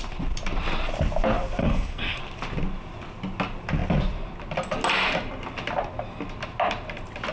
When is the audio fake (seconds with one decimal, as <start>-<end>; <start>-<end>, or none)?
1.6-2.2